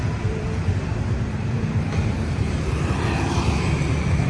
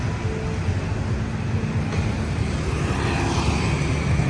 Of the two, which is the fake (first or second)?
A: first